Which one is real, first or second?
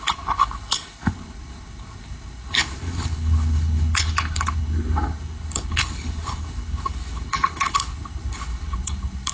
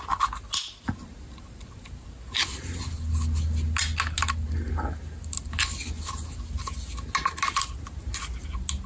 second